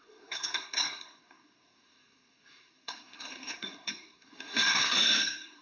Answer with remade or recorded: remade